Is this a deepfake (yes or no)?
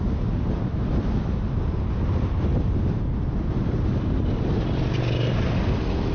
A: no